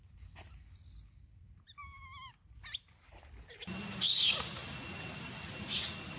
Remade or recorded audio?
recorded